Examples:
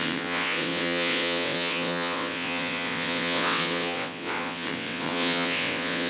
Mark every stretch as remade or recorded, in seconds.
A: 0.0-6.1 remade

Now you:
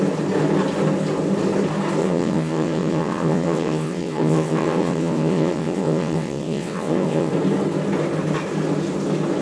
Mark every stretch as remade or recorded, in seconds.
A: 0.0-2.0 recorded; 2.0-7.3 remade; 7.3-9.4 recorded

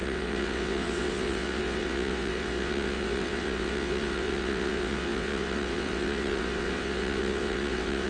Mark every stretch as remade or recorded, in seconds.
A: 0.0-8.1 remade

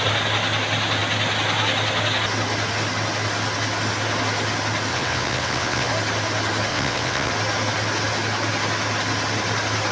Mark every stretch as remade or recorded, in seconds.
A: 0.0-4.9 recorded; 4.9-5.9 remade; 5.9-6.7 recorded; 6.7-7.3 remade; 7.3-9.9 recorded

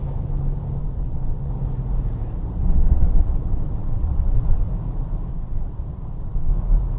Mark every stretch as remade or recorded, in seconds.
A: 0.0-0.8 recorded; 0.8-1.5 remade; 1.5-2.6 recorded; 2.6-4.7 remade; 4.7-5.3 recorded; 5.3-6.5 remade; 6.5-7.0 recorded

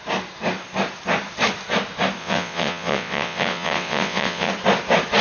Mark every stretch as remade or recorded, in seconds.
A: 0.0-2.2 recorded; 2.2-4.5 remade; 4.5-5.2 recorded